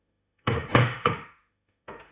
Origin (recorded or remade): remade